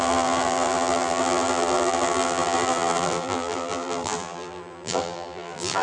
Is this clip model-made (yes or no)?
yes